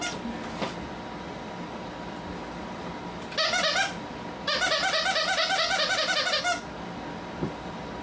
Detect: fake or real real